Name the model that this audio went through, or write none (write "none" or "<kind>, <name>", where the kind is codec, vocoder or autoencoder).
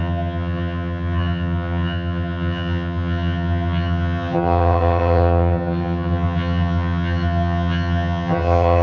vocoder, HiFi-GAN